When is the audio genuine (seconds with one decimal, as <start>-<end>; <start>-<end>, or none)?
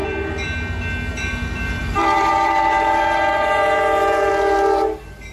0.0-1.8; 4.3-5.3